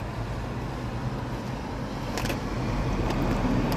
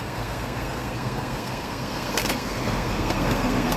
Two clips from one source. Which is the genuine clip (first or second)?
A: first